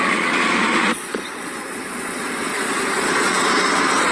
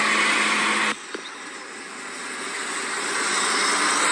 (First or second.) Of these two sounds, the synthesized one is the first